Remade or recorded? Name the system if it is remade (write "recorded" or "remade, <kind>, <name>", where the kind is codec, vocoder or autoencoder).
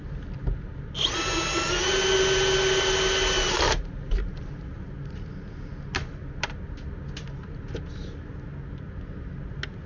recorded